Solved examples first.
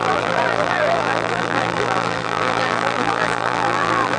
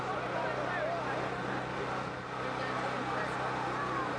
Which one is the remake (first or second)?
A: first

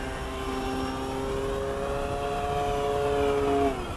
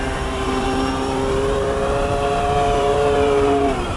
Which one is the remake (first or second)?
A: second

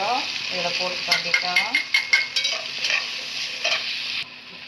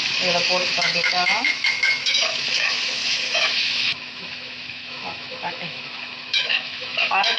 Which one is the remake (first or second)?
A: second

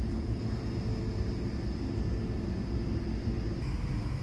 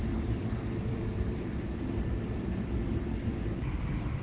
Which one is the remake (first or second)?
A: second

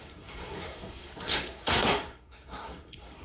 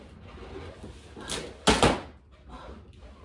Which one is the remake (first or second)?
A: first